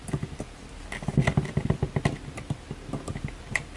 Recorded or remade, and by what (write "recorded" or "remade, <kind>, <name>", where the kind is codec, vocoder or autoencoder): recorded